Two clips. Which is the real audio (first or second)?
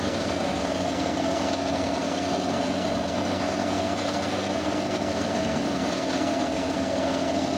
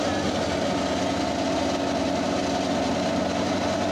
second